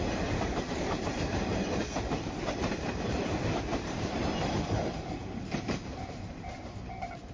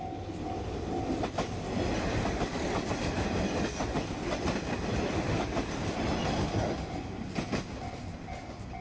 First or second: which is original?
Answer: second